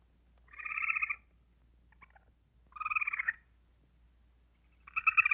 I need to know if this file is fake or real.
real